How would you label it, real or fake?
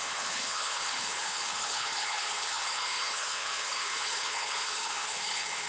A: fake